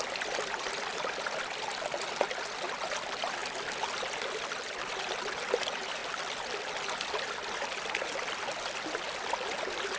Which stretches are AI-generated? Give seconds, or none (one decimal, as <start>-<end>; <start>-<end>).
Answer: none